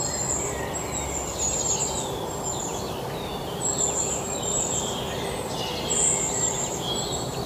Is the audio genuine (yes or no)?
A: yes